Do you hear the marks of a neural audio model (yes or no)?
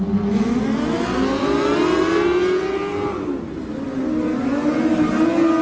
no